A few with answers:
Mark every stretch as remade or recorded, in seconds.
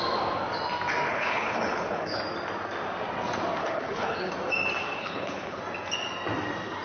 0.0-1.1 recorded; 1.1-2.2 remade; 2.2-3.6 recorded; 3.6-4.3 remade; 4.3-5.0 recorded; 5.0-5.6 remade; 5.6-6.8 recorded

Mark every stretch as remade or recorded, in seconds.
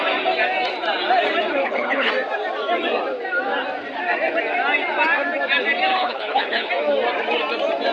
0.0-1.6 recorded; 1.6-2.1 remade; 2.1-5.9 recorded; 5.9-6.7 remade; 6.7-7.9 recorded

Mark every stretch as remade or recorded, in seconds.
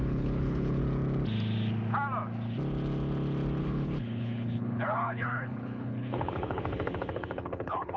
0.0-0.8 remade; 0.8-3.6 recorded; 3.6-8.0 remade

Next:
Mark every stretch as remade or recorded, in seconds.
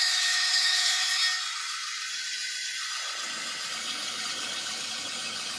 0.0-1.2 remade; 1.2-3.7 recorded; 3.7-5.6 remade